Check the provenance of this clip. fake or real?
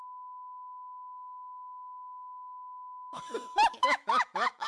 fake